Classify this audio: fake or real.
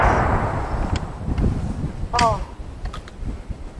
real